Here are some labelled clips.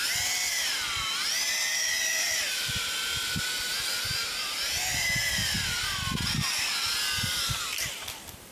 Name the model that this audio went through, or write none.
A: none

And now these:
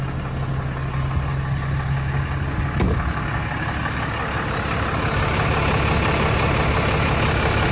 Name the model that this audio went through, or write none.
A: none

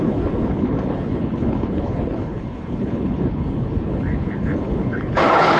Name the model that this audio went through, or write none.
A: codec, HILCodec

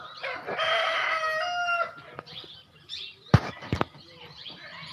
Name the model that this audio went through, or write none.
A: none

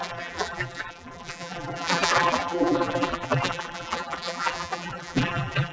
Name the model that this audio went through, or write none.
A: vocoder, BigVGAN v2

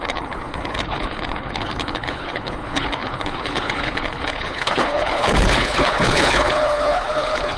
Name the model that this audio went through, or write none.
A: codec, HILCodec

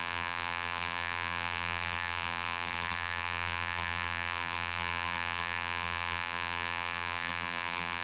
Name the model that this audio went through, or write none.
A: vocoder, BigVGAN v2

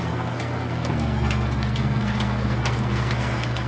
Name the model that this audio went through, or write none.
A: codec, SNAC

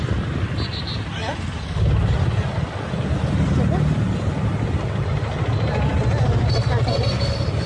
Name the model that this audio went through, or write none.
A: none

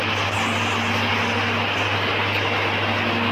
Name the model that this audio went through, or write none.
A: none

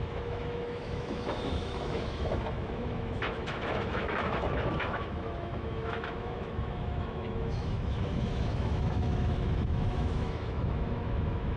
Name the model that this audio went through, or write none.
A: autoencoder, DAC-VAE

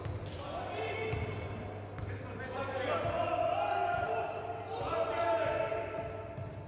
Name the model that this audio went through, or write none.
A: none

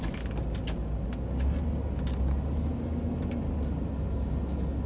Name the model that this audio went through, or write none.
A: none